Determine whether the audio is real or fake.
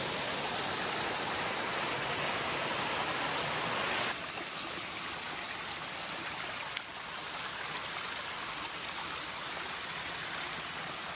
real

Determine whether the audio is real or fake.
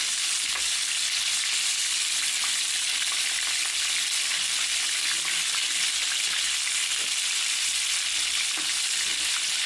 real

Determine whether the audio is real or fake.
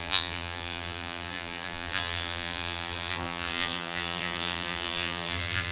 fake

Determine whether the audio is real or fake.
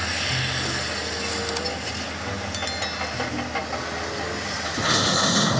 real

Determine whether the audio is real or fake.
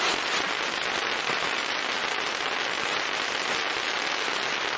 real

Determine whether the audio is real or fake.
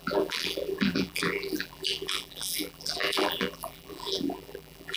fake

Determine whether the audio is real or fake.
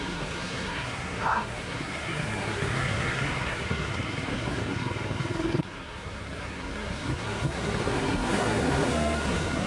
fake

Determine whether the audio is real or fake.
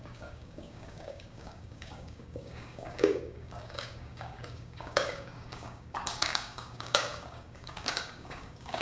fake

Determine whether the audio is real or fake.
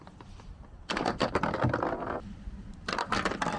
fake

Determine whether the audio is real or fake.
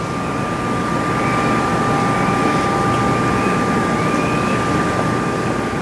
real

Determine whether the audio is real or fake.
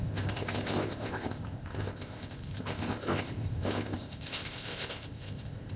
fake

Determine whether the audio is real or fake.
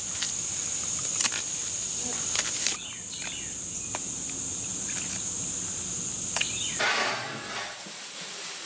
real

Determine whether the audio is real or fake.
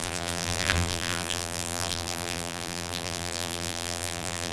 fake